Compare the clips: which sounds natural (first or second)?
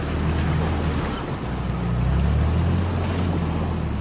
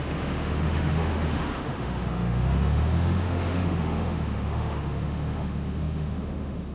first